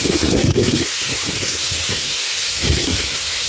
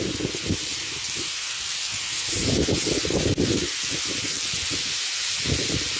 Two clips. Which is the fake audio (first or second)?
first